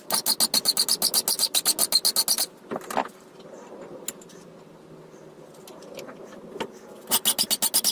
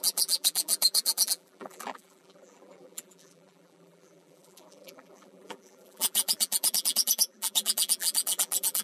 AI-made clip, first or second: second